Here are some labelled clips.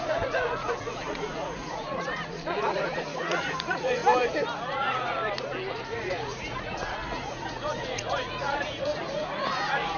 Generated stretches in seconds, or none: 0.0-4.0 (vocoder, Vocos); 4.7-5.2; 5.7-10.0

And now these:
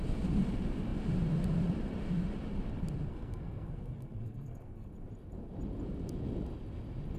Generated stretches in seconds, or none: 3.1-4.9 (codec, SNAC)

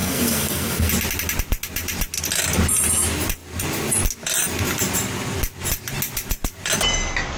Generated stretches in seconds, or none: 0.0-0.9 (codec, SNAC)